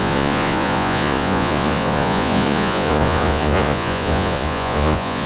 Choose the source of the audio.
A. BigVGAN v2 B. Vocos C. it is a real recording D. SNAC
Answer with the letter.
B